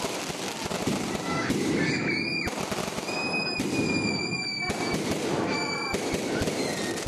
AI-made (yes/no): no